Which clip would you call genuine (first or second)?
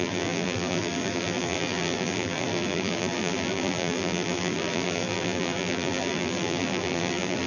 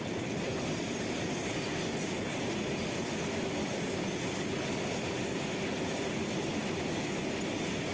second